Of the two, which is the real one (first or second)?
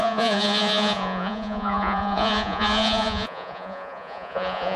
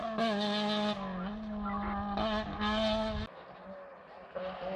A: second